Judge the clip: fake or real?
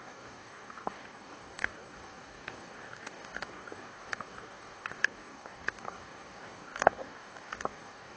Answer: fake